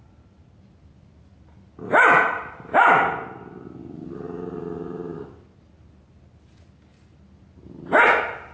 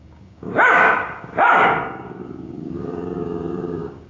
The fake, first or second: second